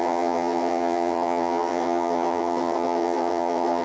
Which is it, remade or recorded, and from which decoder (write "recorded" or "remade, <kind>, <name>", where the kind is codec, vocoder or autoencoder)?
remade, vocoder, HiFi-GAN